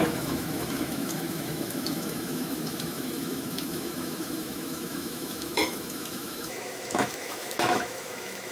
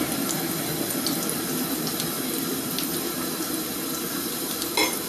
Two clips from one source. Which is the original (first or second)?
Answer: second